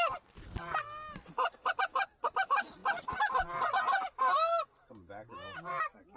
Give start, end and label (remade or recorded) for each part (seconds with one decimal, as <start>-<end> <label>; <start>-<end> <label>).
0.0-6.2 recorded